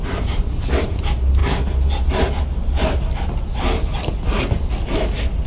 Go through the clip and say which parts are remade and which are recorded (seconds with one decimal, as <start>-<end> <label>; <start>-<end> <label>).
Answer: 0.0-5.5 recorded